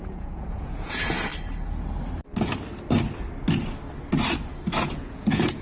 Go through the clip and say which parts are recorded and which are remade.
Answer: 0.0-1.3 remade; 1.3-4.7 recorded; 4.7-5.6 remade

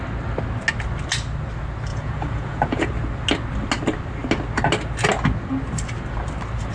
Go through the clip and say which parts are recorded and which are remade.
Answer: 0.0-1.9 recorded; 1.9-2.9 remade; 2.9-6.7 recorded

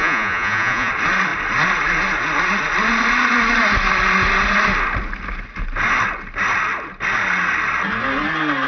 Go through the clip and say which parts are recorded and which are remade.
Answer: 0.0-0.9 remade; 0.9-8.7 recorded